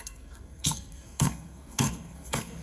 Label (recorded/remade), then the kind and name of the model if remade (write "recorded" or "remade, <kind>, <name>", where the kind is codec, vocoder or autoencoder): remade, codec, SNAC